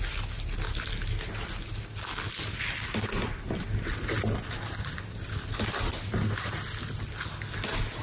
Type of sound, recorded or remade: recorded